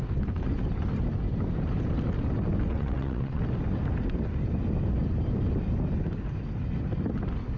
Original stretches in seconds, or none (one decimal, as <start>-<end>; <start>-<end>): 0.0-2.7; 3.4-7.6